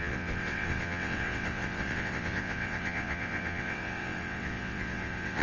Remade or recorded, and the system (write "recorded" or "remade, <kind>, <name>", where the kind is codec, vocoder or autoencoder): remade, vocoder, WaveNeXt